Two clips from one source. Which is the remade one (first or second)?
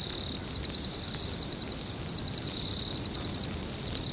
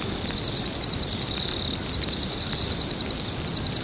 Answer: second